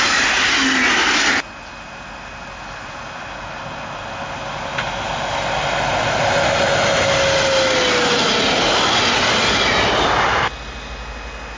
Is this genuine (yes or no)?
yes